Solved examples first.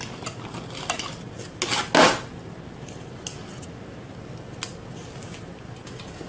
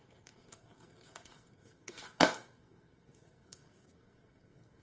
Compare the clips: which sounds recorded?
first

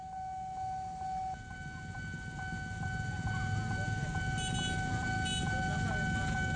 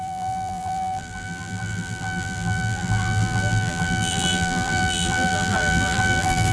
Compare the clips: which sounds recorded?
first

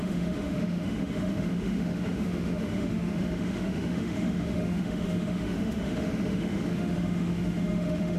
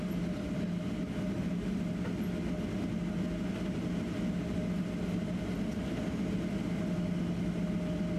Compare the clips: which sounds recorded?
second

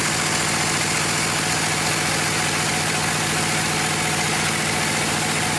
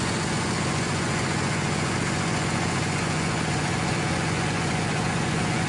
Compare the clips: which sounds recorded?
first